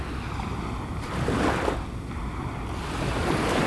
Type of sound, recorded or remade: recorded